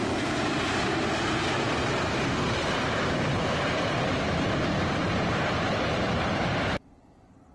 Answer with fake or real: fake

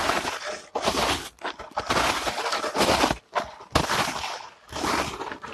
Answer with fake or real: real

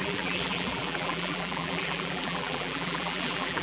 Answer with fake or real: fake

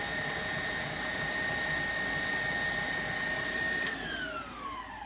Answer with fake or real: real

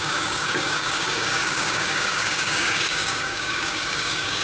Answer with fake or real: fake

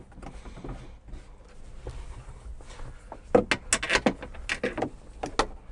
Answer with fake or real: real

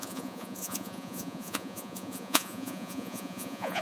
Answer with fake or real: fake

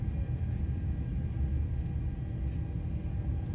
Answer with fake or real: real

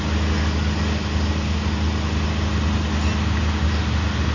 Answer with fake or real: real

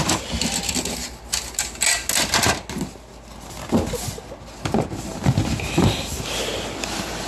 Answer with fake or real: real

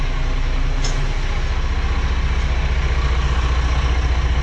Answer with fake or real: real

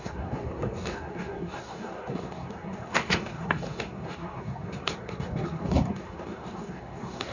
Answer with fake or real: fake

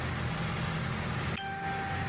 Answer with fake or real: real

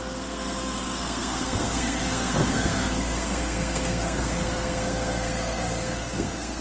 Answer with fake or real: fake